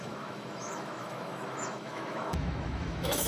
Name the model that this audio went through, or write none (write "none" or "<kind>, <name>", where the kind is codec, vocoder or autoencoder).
autoencoder, DAC-VAE